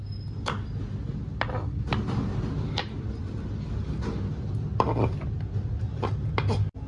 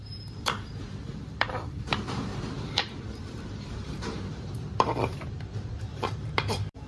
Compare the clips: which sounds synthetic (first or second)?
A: second